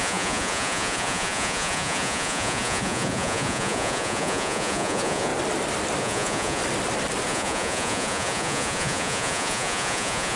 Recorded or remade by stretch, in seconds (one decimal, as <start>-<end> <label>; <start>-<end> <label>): 0.0-5.3 remade; 5.3-6.0 recorded; 6.0-6.6 remade; 6.6-7.3 recorded; 7.3-10.4 remade